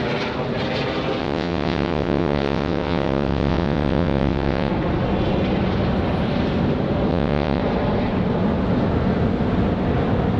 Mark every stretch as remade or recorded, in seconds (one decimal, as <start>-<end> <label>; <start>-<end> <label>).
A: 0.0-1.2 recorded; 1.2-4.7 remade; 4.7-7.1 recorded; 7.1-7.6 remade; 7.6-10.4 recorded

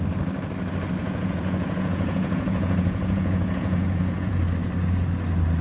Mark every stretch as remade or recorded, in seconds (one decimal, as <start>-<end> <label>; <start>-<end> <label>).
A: 0.0-1.0 recorded; 1.0-4.4 remade; 4.4-5.6 recorded

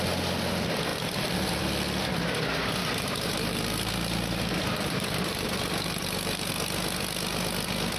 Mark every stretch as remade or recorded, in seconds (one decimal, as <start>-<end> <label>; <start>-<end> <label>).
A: 0.0-0.9 recorded; 0.9-1.6 remade; 1.6-2.8 recorded; 2.8-6.5 remade; 6.5-8.0 recorded

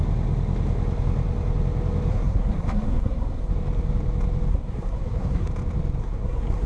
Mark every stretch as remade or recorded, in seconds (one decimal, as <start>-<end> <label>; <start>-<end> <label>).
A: 0.0-2.1 recorded; 2.1-3.5 remade; 3.5-4.5 recorded; 4.5-5.5 remade; 5.5-6.0 recorded; 6.0-6.7 remade

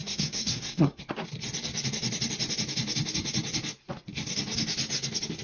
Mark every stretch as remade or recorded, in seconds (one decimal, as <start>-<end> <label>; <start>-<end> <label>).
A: 0.0-1.0 remade; 1.0-5.4 recorded

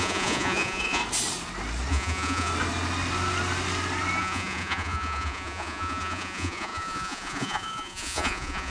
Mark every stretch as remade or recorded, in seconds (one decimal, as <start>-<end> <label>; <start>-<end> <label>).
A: 0.0-1.0 remade; 1.0-1.9 recorded; 1.9-2.5 remade; 2.5-4.2 recorded; 4.2-8.7 remade

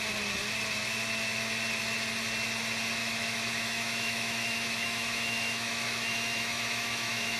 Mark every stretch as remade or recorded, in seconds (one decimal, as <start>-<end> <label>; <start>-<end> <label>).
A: 0.0-3.0 recorded; 3.0-7.4 remade